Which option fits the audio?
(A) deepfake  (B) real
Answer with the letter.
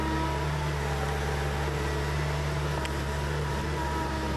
B